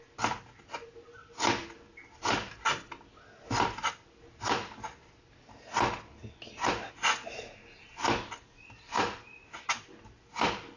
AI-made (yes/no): no